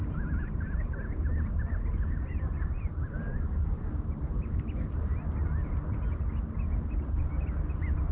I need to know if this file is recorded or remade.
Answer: recorded